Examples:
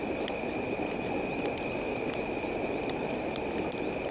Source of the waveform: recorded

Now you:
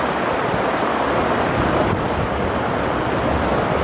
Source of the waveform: recorded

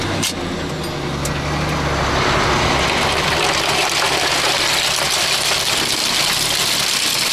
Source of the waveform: recorded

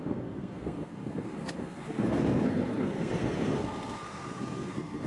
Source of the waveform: remade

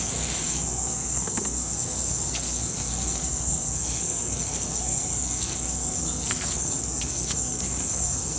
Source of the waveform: remade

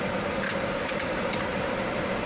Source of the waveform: recorded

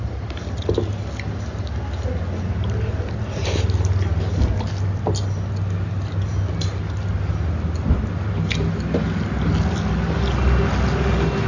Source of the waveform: recorded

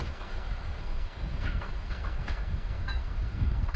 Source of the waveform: remade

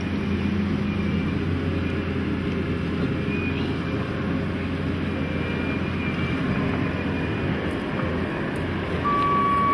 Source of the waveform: recorded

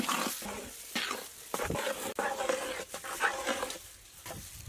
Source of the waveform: recorded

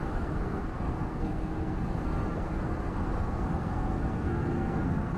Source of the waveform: remade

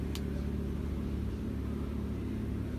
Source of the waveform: recorded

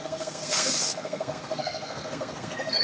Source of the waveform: remade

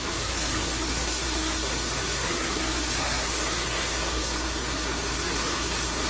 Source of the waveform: remade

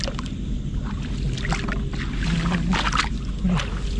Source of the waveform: recorded